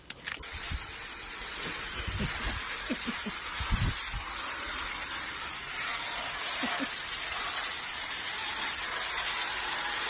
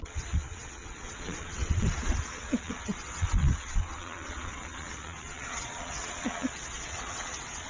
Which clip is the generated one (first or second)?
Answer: second